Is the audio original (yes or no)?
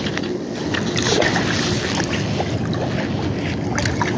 yes